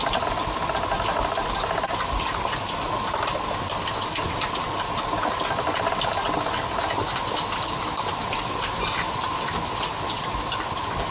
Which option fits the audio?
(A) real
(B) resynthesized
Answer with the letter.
A